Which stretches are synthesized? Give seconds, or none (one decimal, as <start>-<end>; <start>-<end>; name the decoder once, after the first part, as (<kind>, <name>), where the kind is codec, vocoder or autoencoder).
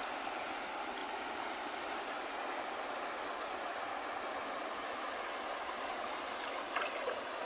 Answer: none